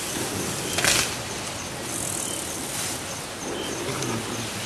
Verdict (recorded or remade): recorded